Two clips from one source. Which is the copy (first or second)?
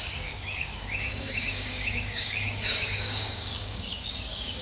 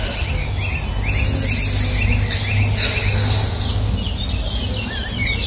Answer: first